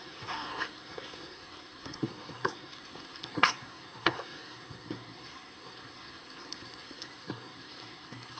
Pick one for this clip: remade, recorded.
remade